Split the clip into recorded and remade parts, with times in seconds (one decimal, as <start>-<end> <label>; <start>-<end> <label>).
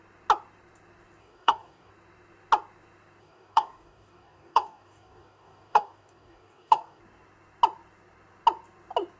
0.0-1.2 recorded; 1.2-1.9 remade; 1.9-3.2 recorded; 3.2-7.0 remade; 7.0-9.2 recorded